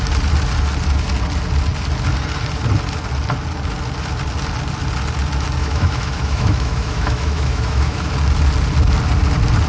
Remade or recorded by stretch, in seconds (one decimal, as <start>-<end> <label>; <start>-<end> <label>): 0.0-5.6 recorded; 5.6-8.1 remade; 8.1-9.7 recorded